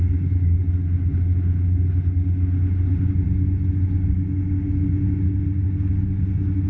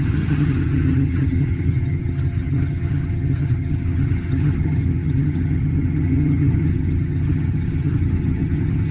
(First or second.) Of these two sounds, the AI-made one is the second